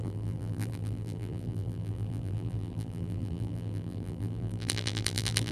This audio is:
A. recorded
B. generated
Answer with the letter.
B